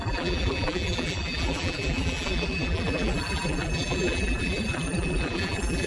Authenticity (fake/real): fake